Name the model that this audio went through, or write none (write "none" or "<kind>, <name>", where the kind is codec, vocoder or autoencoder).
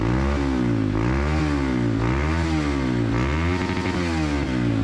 none